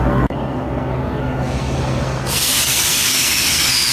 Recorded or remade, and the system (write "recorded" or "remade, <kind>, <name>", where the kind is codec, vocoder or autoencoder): remade, codec, SNAC